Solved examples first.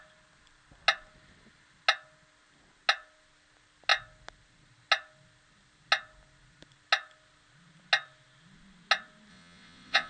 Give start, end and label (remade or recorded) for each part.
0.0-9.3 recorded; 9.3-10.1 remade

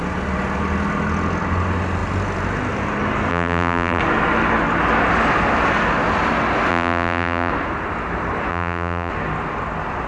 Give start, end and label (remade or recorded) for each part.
0.0-3.3 recorded; 3.3-4.0 remade; 4.0-6.7 recorded; 6.7-7.5 remade; 7.5-8.5 recorded; 8.5-9.1 remade; 9.1-10.1 recorded

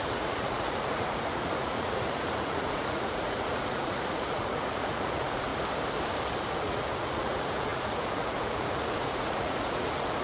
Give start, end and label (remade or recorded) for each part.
0.0-5.5 remade; 5.5-6.5 recorded; 6.5-10.2 remade